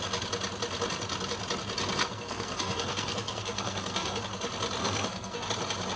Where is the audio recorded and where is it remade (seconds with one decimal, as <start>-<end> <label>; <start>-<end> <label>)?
0.0-2.0 recorded; 2.0-4.2 remade; 4.2-4.8 recorded; 4.8-5.5 remade; 5.5-6.0 recorded